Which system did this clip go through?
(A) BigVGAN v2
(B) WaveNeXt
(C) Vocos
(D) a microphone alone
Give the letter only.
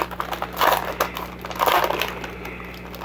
D